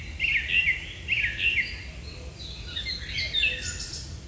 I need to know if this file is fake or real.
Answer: real